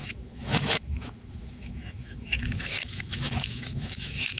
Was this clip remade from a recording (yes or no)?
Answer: yes